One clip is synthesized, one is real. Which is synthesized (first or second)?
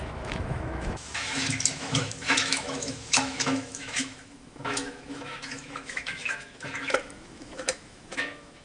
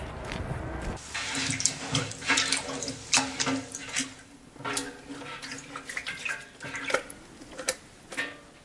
first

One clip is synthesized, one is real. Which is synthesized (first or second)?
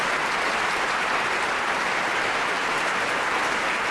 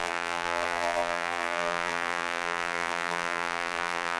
second